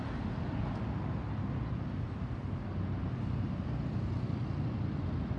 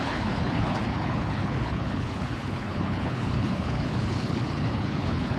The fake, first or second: second